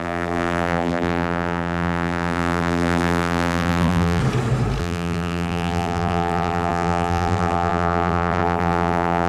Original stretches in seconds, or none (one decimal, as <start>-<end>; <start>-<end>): 4.2-4.8